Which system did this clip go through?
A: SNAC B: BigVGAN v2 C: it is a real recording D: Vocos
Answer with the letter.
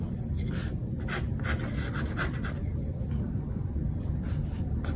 C